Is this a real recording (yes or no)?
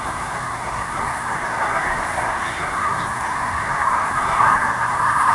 no